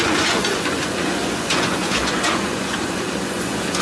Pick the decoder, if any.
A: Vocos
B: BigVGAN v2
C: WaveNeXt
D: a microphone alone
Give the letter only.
A